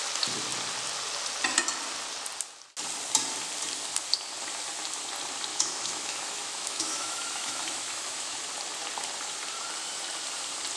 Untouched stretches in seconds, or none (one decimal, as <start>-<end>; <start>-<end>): 0.0-5.5; 8.4-10.8